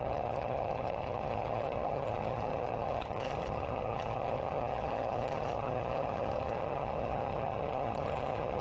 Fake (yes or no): yes